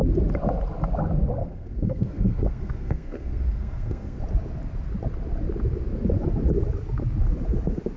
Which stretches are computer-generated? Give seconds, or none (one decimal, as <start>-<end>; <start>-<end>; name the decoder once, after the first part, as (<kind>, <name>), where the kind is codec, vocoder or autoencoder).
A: 1.4-4.2 (codec, SNAC)

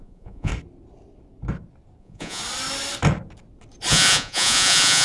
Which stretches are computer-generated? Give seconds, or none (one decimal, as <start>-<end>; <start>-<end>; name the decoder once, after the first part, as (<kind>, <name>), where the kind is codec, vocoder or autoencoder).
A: 0.0-0.5 (vocoder, Vocos); 2.0-2.4; 3.9-5.0